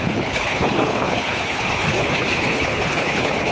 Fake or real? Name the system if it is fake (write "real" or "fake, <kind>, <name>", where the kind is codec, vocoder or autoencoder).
fake, codec, HILCodec